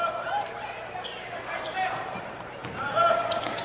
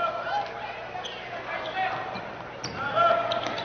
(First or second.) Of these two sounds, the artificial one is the first